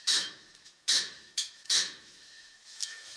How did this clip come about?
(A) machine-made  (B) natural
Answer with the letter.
A